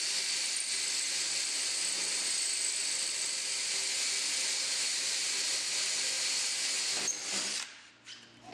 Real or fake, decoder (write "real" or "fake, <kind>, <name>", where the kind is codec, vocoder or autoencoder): real